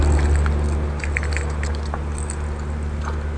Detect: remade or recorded recorded